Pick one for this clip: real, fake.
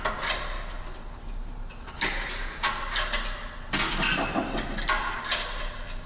real